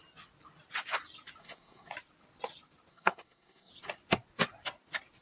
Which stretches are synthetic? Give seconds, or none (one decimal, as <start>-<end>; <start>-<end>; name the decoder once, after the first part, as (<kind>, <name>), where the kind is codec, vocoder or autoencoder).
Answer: 1.4-1.9 (codec, SNAC); 2.9-3.7